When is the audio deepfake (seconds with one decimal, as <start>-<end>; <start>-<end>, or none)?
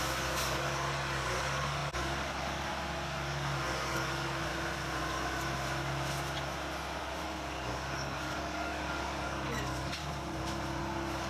0.0-4.5; 7.0-10.0; 10.8-11.3